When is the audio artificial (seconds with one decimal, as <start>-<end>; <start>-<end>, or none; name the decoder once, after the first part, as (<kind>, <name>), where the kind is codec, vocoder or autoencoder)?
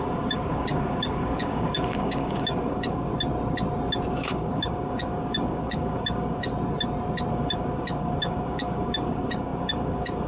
0.0-3.1 (codec, DAC); 4.1-6.5; 7.3-10.3